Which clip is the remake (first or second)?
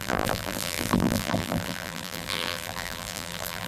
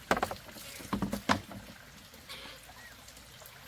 first